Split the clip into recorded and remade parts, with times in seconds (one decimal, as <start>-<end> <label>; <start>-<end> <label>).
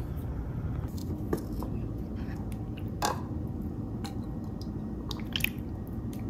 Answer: 0.0-6.3 recorded